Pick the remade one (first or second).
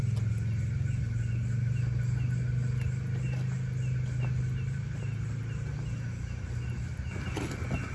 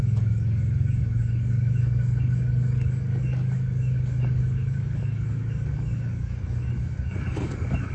second